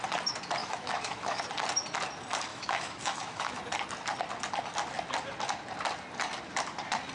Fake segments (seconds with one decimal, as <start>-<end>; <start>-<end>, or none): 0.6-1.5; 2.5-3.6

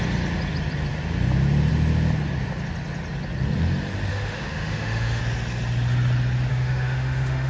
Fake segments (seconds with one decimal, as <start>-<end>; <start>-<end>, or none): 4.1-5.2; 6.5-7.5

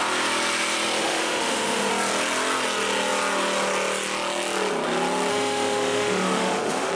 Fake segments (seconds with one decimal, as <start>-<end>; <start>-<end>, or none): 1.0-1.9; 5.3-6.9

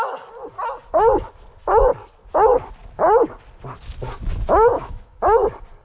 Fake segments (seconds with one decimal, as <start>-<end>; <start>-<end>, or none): 4.7-5.2

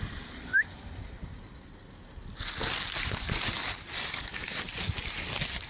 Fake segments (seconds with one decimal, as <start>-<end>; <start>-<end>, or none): none

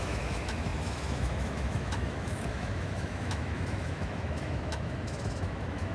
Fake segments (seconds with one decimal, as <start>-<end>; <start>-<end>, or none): 0.0-5.9